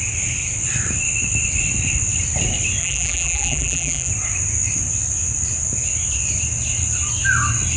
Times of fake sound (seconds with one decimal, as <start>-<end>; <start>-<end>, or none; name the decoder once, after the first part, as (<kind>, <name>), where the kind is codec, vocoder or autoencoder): 2.8-4.1 (vocoder, BigVGAN v2)